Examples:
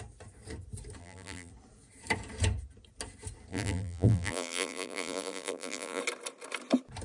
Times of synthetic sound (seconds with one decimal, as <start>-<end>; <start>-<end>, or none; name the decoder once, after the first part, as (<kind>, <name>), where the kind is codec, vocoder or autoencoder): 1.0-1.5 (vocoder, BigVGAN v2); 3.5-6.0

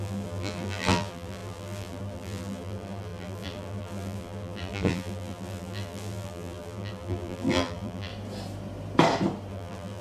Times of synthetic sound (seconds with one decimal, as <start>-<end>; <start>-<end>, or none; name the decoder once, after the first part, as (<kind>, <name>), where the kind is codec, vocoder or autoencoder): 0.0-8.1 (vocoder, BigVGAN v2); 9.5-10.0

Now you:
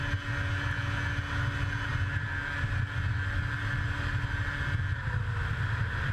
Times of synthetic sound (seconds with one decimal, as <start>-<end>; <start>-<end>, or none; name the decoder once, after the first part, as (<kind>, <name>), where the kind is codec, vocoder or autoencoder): none

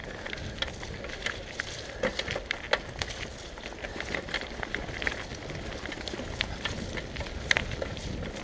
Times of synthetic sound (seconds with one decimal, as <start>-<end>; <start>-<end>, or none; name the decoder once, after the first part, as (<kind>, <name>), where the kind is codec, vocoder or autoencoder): 5.3-6.3 (vocoder, BigVGAN v2)

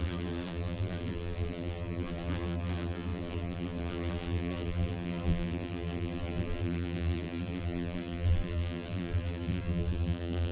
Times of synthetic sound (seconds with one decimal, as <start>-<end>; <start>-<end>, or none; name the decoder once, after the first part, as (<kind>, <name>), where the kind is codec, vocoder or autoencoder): 0.0-10.5 (vocoder, BigVGAN v2)

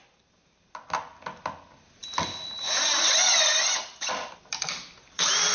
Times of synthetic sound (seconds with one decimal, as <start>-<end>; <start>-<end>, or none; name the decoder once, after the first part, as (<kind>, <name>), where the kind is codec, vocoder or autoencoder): 2.0-5.5 (vocoder, BigVGAN v2)